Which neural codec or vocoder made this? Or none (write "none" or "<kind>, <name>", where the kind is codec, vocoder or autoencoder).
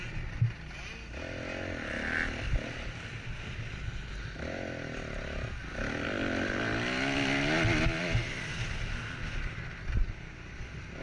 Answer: none